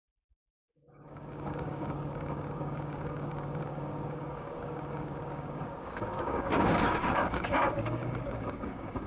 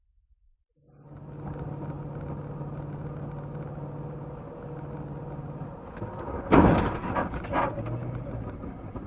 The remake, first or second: first